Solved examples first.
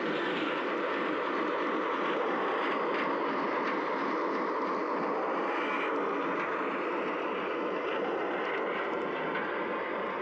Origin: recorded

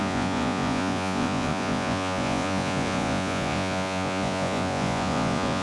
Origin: remade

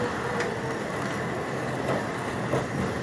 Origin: recorded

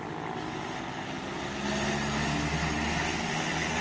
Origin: recorded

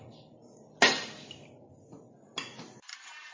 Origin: recorded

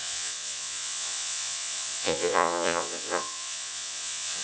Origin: remade